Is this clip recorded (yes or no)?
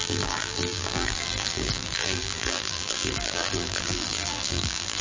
no